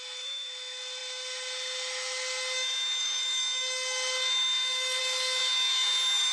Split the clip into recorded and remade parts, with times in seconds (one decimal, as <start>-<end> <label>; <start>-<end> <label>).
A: 0.0-6.3 remade